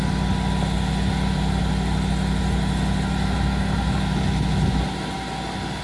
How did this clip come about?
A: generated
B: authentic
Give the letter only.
B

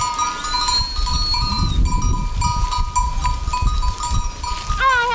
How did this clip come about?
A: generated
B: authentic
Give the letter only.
B